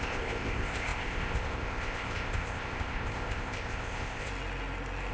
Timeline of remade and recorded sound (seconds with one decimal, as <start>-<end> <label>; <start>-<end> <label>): 0.0-4.3 remade; 4.3-5.1 recorded